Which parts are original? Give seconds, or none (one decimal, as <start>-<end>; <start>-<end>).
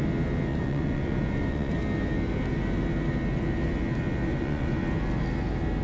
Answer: 0.0-0.5; 1.7-4.3; 4.8-5.8